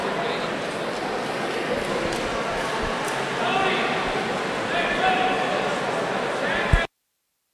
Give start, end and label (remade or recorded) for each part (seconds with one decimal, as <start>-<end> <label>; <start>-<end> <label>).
0.0-7.5 recorded